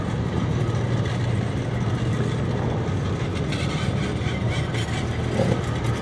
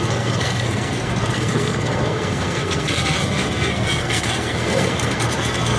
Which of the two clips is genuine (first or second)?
first